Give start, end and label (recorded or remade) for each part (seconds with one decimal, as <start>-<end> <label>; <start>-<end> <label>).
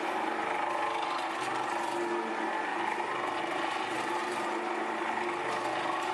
0.0-2.7 recorded; 2.7-4.7 remade; 4.7-6.1 recorded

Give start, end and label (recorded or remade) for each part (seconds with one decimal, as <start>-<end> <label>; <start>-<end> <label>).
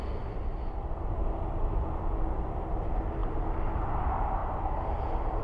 0.0-5.4 recorded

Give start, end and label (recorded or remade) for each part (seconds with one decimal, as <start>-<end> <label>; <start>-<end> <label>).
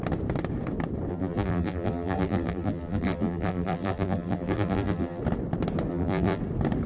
0.0-1.1 recorded; 1.1-5.2 remade; 5.2-5.9 recorded; 5.9-6.4 remade; 6.4-6.9 recorded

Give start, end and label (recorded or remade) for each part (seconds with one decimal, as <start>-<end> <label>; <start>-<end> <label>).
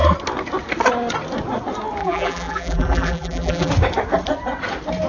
0.0-2.0 recorded; 2.0-3.7 remade; 3.7-5.1 recorded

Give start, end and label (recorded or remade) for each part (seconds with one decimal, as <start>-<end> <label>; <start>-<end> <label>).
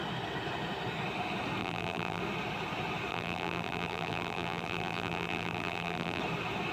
0.0-1.6 recorded; 1.6-2.2 remade; 2.2-3.1 recorded; 3.1-6.2 remade; 6.2-6.7 recorded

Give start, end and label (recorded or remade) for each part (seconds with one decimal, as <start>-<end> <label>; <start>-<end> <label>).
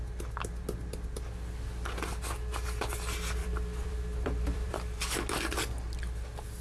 0.0-3.4 recorded; 3.4-4.7 remade; 4.7-6.6 recorded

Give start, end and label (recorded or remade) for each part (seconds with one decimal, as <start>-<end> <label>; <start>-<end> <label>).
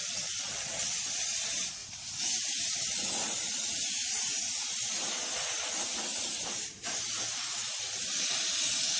0.0-1.8 recorded; 1.8-3.6 remade; 3.6-6.1 recorded; 6.1-7.2 remade; 7.2-9.0 recorded